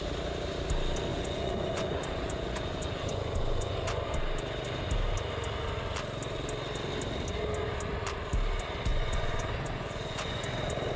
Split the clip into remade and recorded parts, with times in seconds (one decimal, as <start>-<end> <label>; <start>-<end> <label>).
0.0-1.1 recorded; 1.1-4.2 remade; 4.2-8.9 recorded; 8.9-10.4 remade; 10.4-11.0 recorded